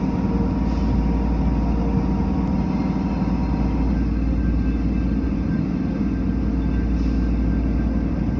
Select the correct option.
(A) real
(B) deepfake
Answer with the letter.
A